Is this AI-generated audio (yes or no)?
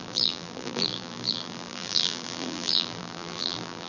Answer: yes